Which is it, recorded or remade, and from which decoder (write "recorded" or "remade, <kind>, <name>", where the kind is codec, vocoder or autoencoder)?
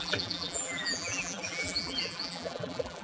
remade, vocoder, BigVGAN v2